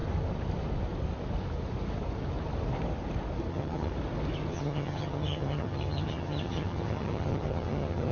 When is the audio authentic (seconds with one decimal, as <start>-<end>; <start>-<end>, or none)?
0.0-3.5; 3.9-4.5